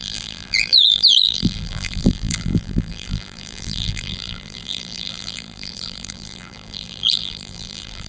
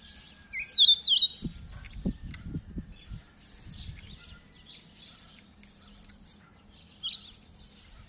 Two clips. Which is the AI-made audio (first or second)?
first